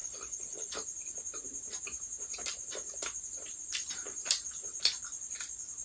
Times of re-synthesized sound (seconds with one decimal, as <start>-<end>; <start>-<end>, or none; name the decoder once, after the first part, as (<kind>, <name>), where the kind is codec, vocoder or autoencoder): 0.0-0.7 (codec, HILCodec)